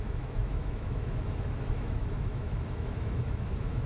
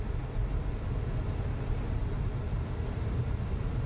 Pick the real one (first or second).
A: second